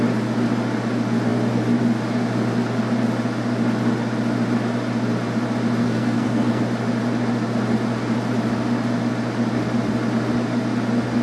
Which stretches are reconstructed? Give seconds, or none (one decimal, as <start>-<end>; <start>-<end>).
5.8-6.6